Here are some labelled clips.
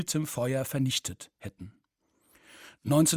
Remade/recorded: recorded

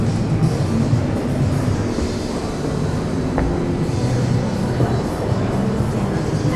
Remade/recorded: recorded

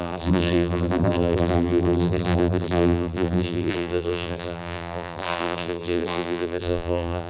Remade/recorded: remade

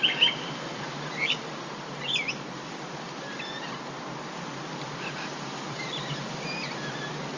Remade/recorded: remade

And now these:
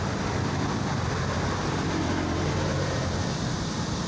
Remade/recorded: remade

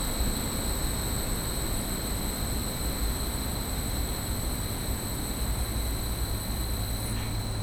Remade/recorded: recorded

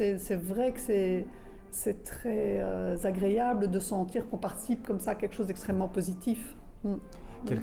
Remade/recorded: recorded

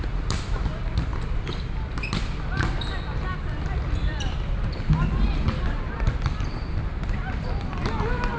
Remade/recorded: remade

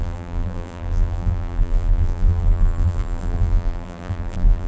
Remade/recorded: remade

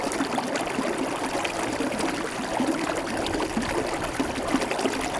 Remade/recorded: recorded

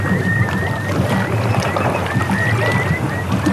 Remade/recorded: recorded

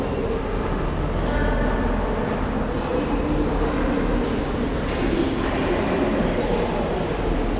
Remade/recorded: recorded